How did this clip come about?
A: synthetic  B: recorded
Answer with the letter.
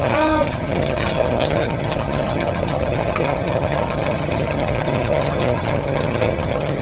A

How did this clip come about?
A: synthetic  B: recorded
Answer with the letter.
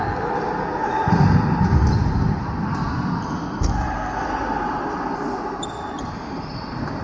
B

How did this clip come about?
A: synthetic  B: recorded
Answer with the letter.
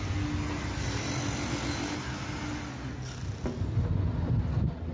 B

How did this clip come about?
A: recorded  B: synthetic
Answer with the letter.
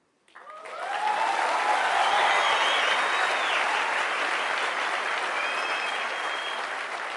A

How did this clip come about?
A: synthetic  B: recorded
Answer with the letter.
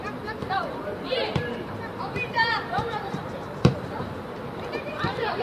A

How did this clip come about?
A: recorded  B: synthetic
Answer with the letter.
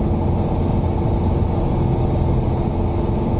A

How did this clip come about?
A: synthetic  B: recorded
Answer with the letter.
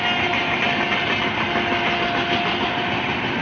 B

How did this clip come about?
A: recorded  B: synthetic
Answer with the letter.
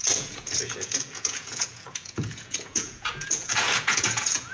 B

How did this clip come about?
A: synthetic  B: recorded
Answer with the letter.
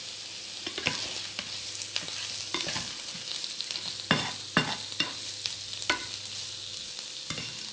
B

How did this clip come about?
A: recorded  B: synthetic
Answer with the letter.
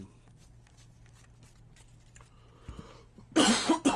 A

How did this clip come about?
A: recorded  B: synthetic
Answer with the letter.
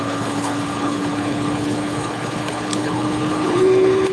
B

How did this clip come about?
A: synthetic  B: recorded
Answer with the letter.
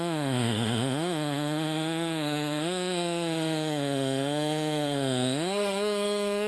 A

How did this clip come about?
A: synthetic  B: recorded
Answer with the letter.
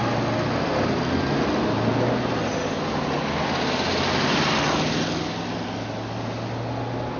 B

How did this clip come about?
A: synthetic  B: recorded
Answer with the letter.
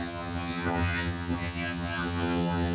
A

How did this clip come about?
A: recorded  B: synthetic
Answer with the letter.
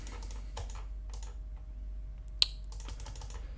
A